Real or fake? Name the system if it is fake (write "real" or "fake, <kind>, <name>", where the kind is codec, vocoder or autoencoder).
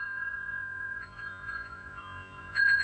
fake, vocoder, Vocos